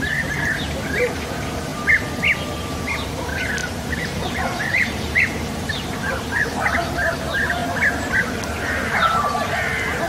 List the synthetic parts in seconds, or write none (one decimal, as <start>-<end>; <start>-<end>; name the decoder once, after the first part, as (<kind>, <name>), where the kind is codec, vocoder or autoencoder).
3.6-6.9 (vocoder, BigVGAN v2)